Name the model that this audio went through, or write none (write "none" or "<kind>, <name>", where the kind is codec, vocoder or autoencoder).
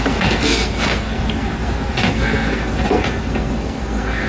codec, SNAC